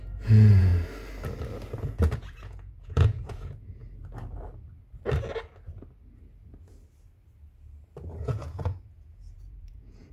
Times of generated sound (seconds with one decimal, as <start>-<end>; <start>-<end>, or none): 0.0-0.7; 1.8-3.8; 8.0-10.1